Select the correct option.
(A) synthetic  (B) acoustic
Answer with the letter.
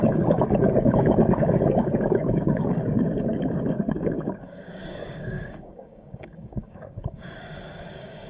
A